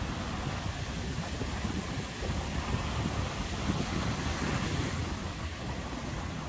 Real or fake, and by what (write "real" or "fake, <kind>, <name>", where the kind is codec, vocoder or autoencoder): real